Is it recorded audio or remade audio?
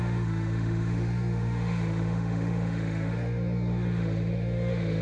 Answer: remade